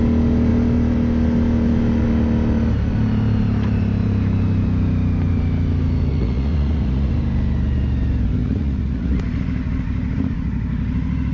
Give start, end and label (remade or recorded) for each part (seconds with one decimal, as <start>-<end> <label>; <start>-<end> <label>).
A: 0.0-6.1 recorded; 6.1-7.1 remade; 7.1-8.4 recorded; 8.4-9.2 remade; 9.2-11.3 recorded

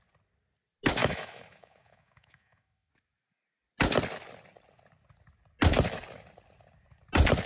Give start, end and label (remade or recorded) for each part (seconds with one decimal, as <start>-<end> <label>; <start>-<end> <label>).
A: 0.0-1.0 recorded; 1.0-2.9 remade; 2.9-7.5 recorded

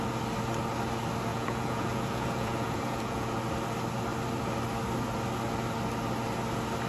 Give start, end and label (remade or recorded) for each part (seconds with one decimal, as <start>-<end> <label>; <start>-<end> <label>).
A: 0.0-1.3 recorded; 1.3-3.4 remade; 3.4-6.9 recorded

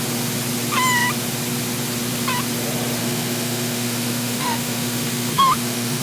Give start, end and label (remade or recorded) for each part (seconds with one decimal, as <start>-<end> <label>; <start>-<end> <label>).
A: 0.0-3.0 recorded; 3.0-6.0 remade

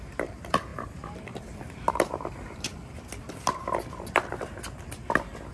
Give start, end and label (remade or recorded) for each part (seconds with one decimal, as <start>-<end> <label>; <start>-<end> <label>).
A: 0.0-2.7 remade; 2.7-5.5 recorded

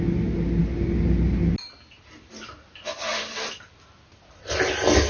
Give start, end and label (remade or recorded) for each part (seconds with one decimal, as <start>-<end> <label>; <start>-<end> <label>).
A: 0.0-5.1 recorded

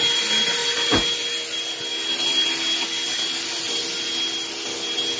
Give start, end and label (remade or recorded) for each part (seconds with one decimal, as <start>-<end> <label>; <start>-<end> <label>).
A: 0.0-5.2 recorded